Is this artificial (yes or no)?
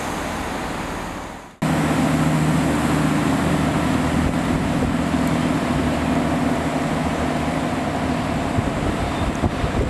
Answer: no